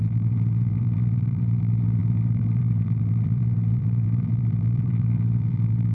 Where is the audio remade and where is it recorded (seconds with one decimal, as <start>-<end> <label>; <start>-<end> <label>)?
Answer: 0.0-5.9 remade